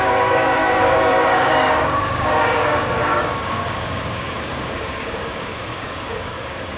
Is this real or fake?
fake